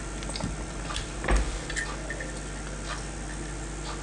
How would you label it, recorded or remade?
recorded